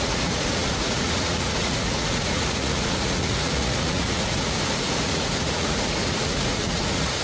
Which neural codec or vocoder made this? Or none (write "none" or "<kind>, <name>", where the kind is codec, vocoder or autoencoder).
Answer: vocoder, Vocos